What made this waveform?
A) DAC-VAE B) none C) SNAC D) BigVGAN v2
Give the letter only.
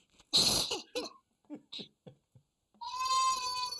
B